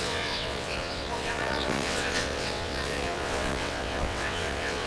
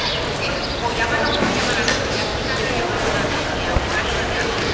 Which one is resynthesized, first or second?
first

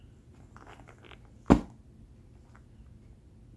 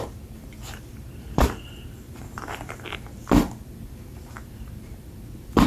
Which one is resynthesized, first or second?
second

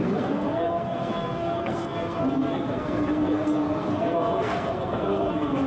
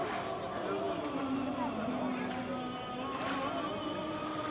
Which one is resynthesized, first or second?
first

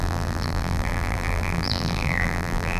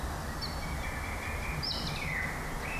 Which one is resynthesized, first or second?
first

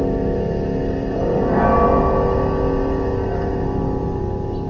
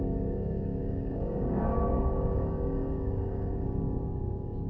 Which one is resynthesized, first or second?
second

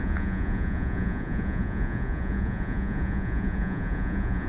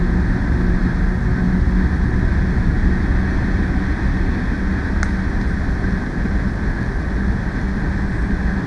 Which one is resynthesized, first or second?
first